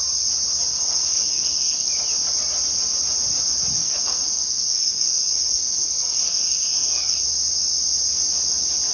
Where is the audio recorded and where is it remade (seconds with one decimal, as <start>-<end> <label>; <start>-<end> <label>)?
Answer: 0.0-0.7 recorded; 0.7-1.9 remade; 1.9-3.8 recorded; 3.8-7.2 remade; 7.2-8.9 recorded